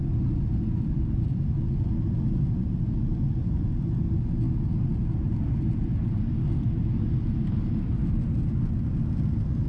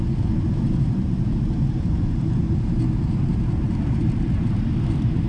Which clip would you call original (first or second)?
first